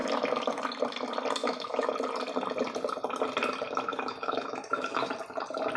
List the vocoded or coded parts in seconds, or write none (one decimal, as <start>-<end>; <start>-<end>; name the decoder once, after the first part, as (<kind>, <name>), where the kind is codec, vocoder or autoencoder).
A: 1.4-1.9 (autoencoder, DAC-VAE); 3.9-5.1